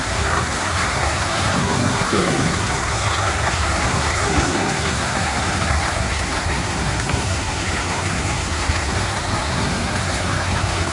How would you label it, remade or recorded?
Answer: remade